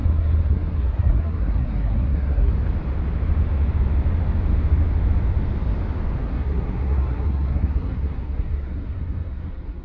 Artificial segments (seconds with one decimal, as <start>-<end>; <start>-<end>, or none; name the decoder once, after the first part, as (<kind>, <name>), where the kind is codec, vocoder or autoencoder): 0.0-2.5 (codec, SNAC); 6.2-9.8